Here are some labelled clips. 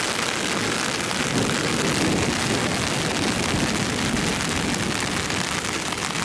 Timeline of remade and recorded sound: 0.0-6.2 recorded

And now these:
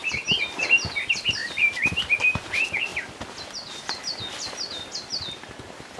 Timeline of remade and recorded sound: 0.0-1.4 recorded; 1.4-2.0 remade; 2.0-6.0 recorded

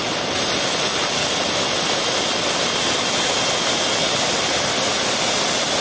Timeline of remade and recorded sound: 0.0-5.8 recorded

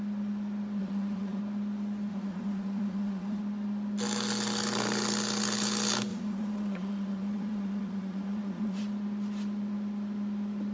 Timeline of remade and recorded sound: 0.0-0.8 recorded; 0.8-1.4 remade; 1.4-2.1 recorded; 2.1-3.4 remade; 3.4-6.1 recorded; 6.1-8.8 remade; 8.8-10.7 recorded

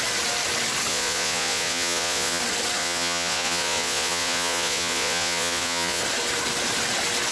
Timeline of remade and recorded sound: 0.0-0.9 recorded; 0.9-2.4 remade; 2.4-2.8 recorded; 2.8-6.0 remade; 6.0-7.3 recorded